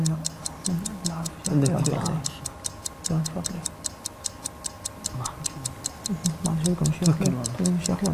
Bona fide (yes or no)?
yes